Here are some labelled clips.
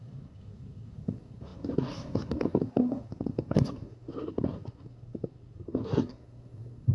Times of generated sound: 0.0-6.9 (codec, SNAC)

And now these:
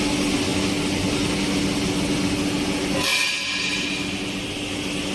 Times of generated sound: none

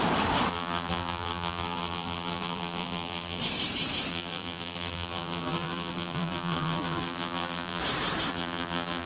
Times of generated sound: 0.5-3.4 (vocoder, BigVGAN v2); 4.1-7.8; 8.3-9.1

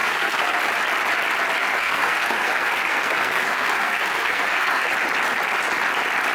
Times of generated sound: 0.0-0.6 (codec, SNAC); 1.6-4.9

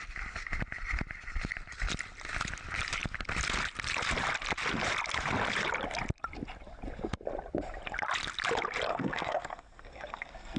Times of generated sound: 8.9-10.6 (codec, SNAC)

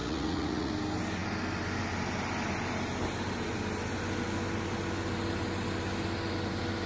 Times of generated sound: 0.0-0.7 (vocoder, Vocos)

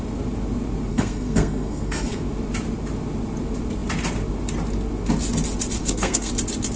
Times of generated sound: 0.9-2.2 (codec, SNAC); 5.8-6.3